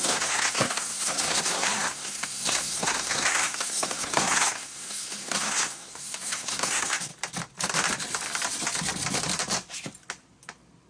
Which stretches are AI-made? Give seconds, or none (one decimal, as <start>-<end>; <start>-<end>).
0.0-7.1